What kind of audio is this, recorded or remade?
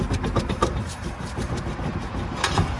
remade